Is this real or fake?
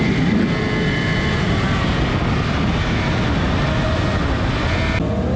real